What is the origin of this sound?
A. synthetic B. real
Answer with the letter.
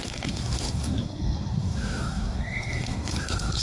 A